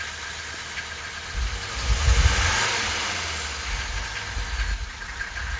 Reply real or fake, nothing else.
real